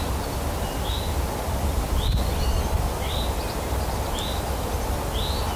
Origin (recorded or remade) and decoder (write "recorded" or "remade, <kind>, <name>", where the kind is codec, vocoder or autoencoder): recorded